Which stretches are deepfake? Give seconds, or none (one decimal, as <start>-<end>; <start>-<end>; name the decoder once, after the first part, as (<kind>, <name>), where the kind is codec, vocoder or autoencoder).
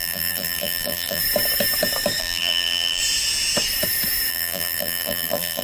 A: 0.0-1.2 (vocoder, BigVGAN v2); 2.2-3.0; 4.3-5.6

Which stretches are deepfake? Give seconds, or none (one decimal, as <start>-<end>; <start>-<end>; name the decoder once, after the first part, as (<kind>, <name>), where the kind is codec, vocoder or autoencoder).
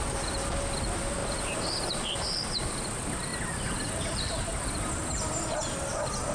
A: 0.0-3.3 (vocoder, BigVGAN v2); 4.0-4.5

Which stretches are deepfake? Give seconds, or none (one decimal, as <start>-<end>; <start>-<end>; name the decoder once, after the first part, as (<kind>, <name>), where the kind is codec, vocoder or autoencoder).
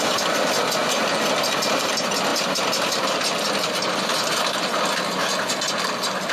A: 0.8-1.9 (vocoder, BigVGAN v2); 2.3-3.2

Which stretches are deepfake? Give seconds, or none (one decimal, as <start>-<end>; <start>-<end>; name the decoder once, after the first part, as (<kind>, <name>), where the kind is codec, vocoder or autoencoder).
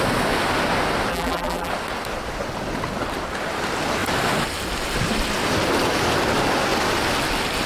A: 1.1-1.7 (vocoder, BigVGAN v2)